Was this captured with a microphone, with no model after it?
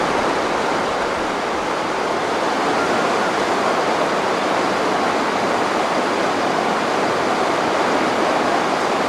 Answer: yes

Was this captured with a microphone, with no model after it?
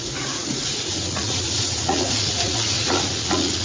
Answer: no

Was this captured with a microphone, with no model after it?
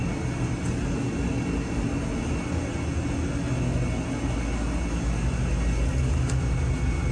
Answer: yes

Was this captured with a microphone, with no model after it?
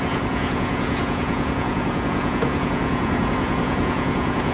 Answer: no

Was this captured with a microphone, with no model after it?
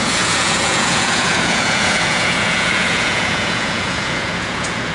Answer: no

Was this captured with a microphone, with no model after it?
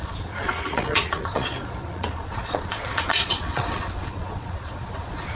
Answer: no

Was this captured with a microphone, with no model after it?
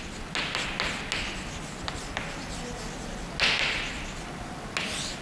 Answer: yes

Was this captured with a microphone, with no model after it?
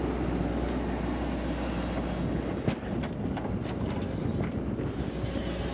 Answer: yes